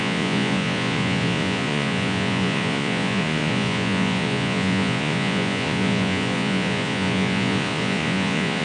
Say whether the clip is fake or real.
fake